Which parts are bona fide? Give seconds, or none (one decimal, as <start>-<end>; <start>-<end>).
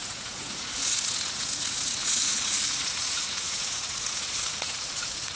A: none